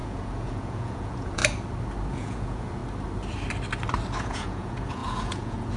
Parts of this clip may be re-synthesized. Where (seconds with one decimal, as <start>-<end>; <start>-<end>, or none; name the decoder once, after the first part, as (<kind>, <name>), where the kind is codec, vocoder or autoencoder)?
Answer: 0.0-1.4 (vocoder, Vocos); 2.1-2.8; 4.2-5.8